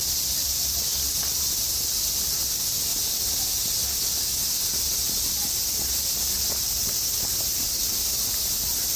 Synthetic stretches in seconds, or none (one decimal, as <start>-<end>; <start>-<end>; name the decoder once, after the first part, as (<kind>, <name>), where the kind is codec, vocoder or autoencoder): 0.0-0.9 (vocoder, BigVGAN v2); 1.7-2.9; 7.7-9.0